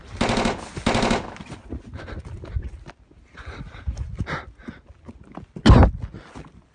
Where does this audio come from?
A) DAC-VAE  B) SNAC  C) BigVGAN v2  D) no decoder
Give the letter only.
D